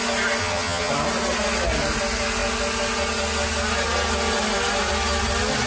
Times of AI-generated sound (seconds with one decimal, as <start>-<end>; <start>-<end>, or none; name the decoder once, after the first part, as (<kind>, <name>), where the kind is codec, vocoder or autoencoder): 0.4-0.9 (vocoder, HiFi-GAN)